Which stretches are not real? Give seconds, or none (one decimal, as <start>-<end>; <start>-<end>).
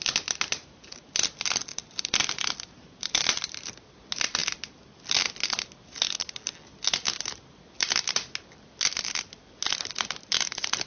1.7-2.7